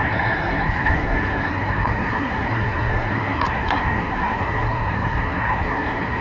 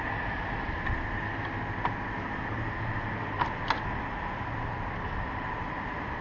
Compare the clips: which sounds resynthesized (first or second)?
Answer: first